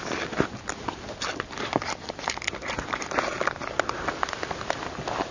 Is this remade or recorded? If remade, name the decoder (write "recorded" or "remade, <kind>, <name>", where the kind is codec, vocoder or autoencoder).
recorded